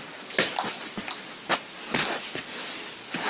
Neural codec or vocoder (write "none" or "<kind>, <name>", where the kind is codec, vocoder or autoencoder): vocoder, BigVGAN v2